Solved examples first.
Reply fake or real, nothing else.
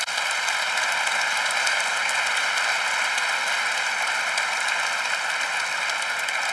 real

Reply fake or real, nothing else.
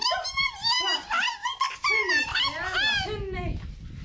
real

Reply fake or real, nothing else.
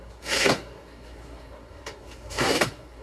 fake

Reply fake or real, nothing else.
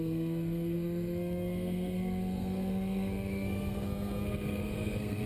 fake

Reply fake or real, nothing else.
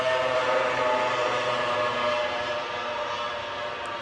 real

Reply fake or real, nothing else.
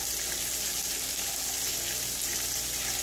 real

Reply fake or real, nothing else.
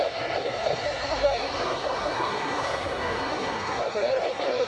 fake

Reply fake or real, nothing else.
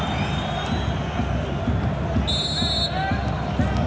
real